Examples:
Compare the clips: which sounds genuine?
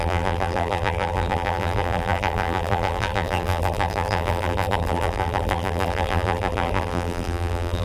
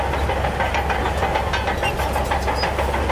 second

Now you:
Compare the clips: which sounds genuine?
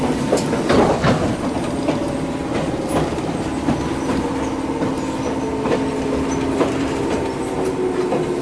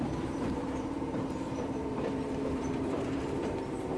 first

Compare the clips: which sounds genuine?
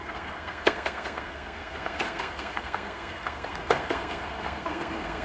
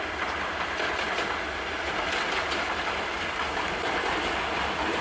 second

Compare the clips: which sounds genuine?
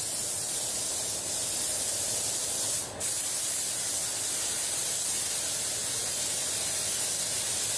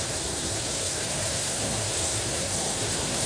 first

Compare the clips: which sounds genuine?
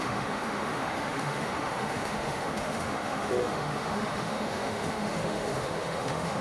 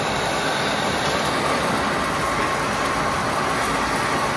second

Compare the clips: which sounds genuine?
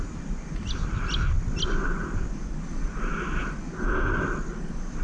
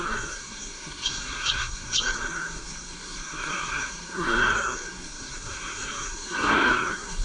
first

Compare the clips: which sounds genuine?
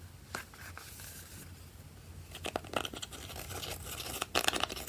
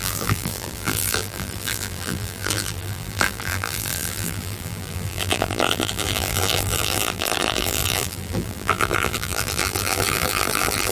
first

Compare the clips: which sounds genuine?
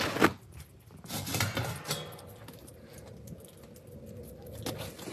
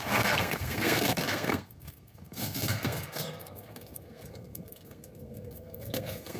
first